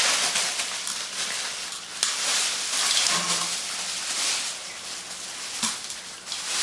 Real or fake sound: real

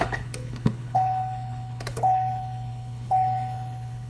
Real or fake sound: fake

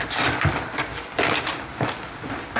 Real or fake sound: real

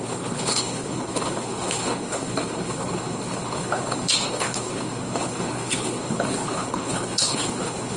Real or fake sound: fake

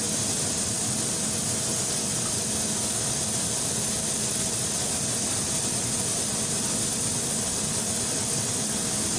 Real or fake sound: real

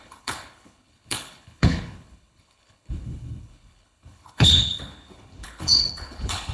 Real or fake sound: fake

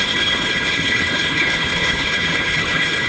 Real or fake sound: fake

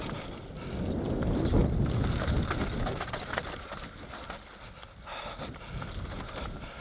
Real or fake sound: real